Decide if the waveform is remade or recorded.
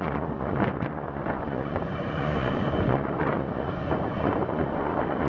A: remade